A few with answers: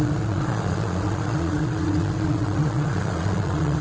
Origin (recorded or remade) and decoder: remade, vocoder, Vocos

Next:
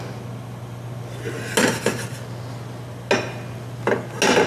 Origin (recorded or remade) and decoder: recorded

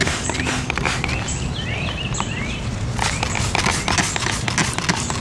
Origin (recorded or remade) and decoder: recorded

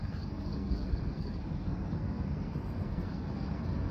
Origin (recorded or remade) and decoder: remade, codec, SNAC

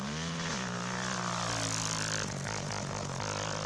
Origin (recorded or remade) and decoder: recorded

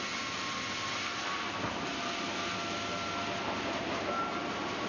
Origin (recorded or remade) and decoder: recorded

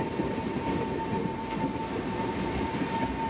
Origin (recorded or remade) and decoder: recorded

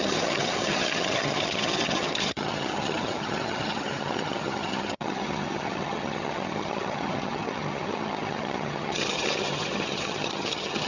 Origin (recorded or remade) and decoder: remade, vocoder, HiFi-GAN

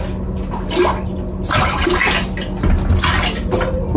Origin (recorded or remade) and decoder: recorded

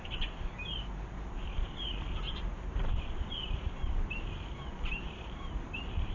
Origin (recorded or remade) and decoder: remade, vocoder, BigVGAN v2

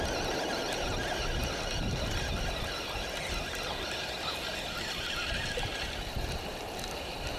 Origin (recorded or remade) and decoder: recorded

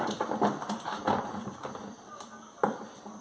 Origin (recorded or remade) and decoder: recorded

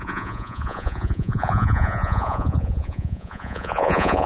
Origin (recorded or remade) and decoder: remade, vocoder, Vocos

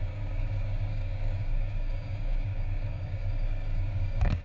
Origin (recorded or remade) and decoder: remade, codec, DAC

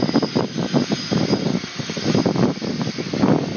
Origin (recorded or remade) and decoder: recorded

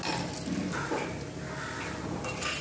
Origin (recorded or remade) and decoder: recorded